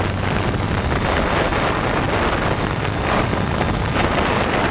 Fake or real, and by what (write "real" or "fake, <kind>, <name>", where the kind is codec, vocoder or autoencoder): real